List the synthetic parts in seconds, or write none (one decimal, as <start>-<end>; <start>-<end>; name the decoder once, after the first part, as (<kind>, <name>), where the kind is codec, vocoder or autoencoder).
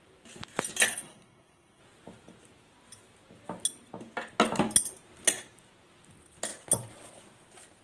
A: 0.9-1.8 (codec, SNAC)